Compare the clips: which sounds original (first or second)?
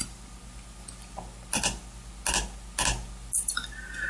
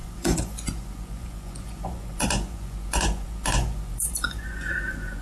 first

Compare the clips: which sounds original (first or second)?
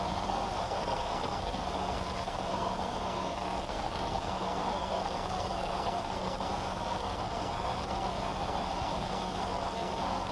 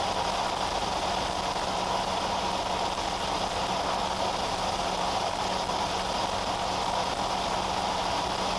second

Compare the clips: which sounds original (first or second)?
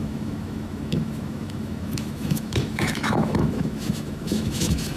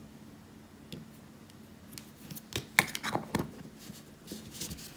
second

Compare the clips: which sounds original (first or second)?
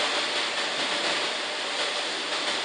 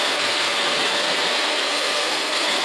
first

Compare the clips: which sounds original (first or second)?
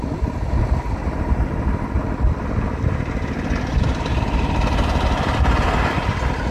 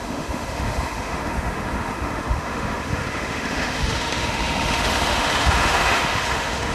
first